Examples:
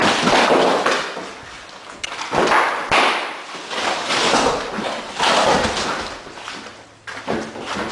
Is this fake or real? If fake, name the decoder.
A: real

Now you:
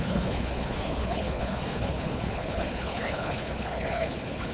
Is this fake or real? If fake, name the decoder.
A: fake, codec, HILCodec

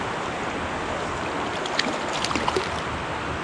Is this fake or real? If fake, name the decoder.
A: real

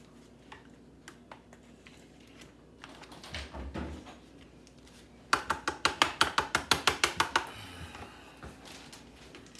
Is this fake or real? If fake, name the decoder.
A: real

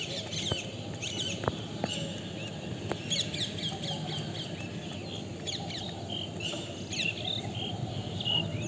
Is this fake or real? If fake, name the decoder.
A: real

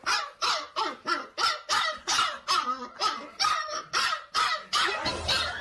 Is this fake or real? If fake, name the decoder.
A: real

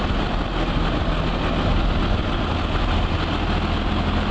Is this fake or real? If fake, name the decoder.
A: real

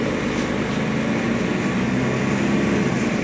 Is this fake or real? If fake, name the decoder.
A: real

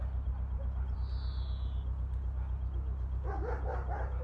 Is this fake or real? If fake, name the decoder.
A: real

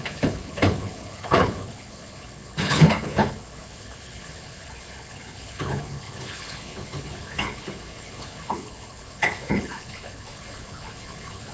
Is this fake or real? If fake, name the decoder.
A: fake, codec, HILCodec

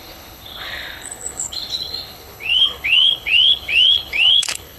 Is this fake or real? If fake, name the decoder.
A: fake, codec, HILCodec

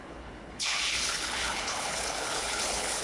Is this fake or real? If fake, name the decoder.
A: fake, codec, HILCodec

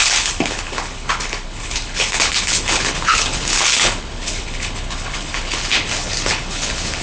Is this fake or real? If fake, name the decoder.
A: fake, codec, HILCodec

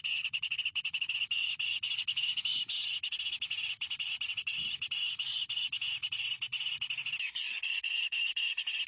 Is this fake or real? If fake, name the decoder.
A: real